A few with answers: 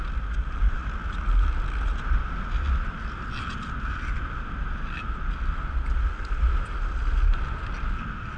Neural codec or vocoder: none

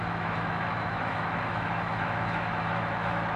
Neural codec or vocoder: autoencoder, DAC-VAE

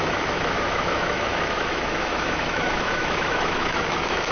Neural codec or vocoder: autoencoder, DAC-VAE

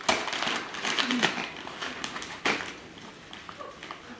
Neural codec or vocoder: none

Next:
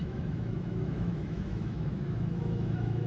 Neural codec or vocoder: autoencoder, DAC-VAE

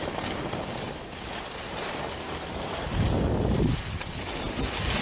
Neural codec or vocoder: none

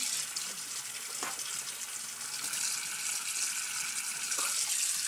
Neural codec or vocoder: none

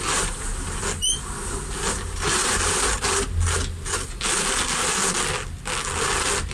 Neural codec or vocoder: none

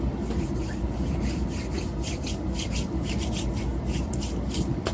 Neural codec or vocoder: none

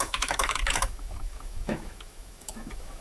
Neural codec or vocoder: autoencoder, DAC-VAE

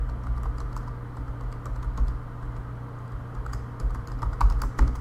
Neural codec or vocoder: none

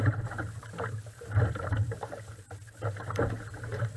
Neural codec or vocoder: none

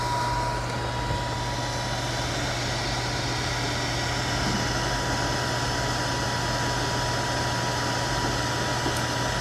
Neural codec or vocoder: none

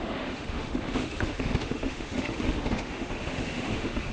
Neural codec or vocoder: autoencoder, DAC-VAE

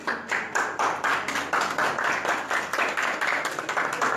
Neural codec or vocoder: none